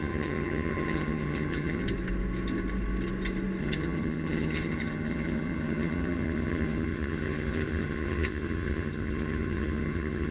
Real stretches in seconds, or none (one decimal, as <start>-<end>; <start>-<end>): 1.8-3.6